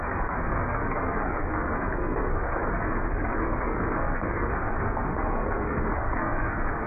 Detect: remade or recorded remade